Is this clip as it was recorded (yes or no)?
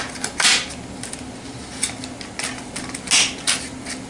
yes